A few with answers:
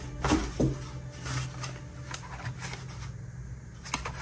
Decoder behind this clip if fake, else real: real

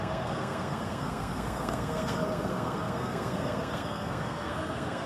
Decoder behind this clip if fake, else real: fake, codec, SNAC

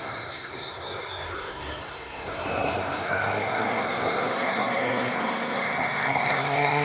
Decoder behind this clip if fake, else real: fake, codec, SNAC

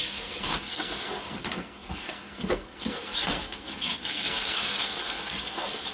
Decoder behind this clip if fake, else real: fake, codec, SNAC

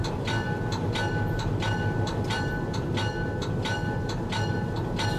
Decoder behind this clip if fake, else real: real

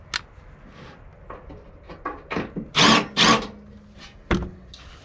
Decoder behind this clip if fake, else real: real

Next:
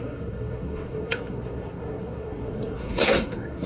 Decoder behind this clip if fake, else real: fake, codec, SNAC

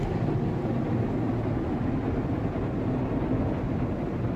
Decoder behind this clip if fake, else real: real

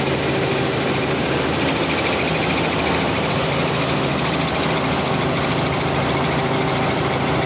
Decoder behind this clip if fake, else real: real